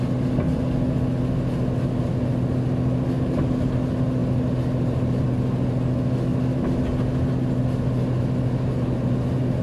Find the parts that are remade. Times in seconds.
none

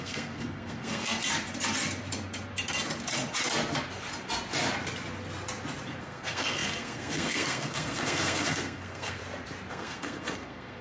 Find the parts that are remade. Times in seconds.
0.0-1.2 (codec, SNAC); 6.0-9.2; 9.7-10.8

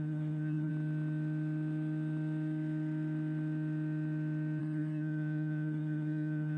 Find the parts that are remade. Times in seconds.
0.0-0.7 (codec, SNAC); 4.6-6.6

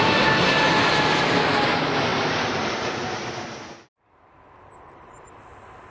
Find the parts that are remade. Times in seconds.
2.1-5.4 (vocoder, BigVGAN v2)

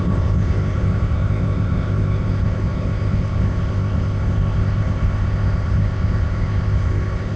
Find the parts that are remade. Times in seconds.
0.0-7.4 (codec, ZipCodec)

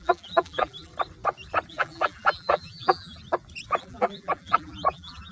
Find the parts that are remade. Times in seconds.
0.0-0.9 (vocoder, BigVGAN v2); 1.7-3.2; 3.8-5.3

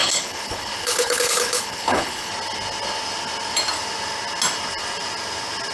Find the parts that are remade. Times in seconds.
0.0-2.3 (codec, HILCodec)